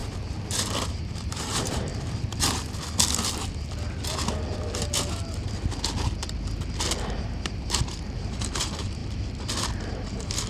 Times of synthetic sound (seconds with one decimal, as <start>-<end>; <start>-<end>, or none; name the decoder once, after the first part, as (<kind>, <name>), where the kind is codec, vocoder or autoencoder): 0.9-1.9 (vocoder, BigVGAN v2); 7.2-9.0; 9.7-10.5